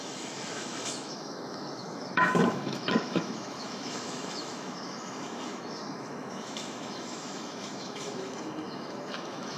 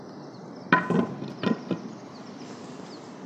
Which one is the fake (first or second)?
first